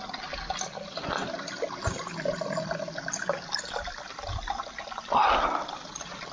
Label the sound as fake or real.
real